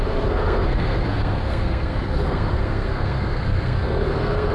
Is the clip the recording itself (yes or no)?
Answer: no